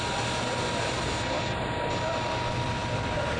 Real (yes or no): yes